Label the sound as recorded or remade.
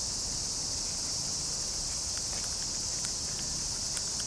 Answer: recorded